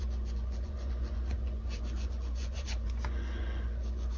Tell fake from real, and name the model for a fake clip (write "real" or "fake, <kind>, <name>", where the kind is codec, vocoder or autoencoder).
fake, vocoder, Vocos